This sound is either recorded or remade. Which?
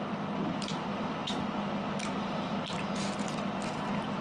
recorded